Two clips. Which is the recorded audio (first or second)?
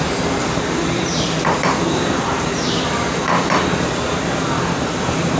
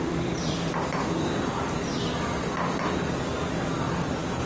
second